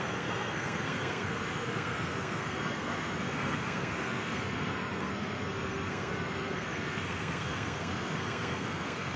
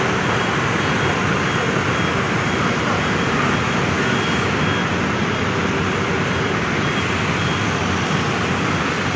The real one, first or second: second